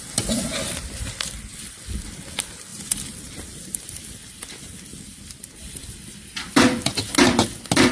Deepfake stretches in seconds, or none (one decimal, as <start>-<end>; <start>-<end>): 1.5-2.1; 2.7-5.9